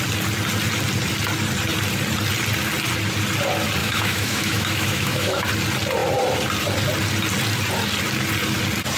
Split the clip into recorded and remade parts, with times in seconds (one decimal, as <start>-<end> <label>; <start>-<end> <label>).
0.0-3.8 recorded; 3.8-5.4 remade; 5.4-9.0 recorded